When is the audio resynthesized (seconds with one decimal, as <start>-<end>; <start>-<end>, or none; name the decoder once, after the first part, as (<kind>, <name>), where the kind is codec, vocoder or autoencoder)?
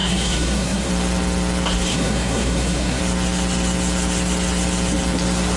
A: 0.0-0.9 (codec, SNAC); 1.9-3.0